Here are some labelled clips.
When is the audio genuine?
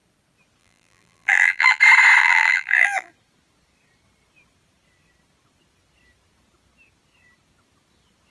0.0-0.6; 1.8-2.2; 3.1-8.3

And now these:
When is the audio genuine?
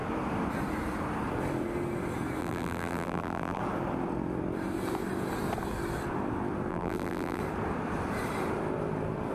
0.0-2.4; 3.6-6.7; 7.4-9.3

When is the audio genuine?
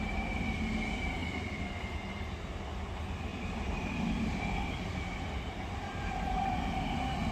0.0-1.2; 1.8-3.3; 6.4-7.3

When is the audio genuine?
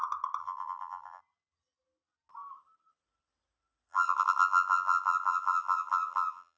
0.0-0.4; 1.2-3.9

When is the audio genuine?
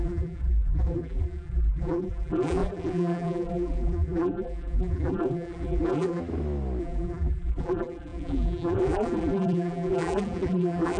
6.2-6.8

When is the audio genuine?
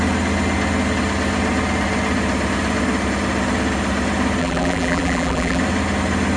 0.0-4.4; 5.6-6.4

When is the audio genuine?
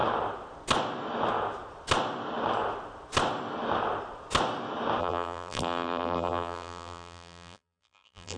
0.0-5.0